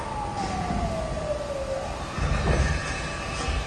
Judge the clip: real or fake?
real